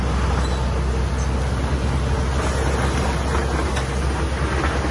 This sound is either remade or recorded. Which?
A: recorded